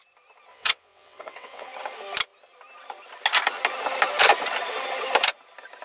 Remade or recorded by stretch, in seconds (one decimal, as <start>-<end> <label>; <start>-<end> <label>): 0.0-0.5 recorded; 0.5-1.7 remade; 1.7-5.8 recorded